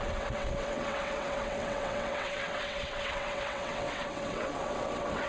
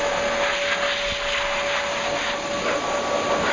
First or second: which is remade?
first